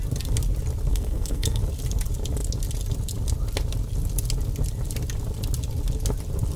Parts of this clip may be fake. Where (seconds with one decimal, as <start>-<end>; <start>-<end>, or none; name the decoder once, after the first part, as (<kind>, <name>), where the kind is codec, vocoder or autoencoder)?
0.9-1.6 (codec, SNAC)